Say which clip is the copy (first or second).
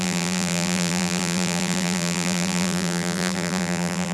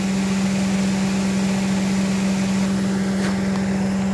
first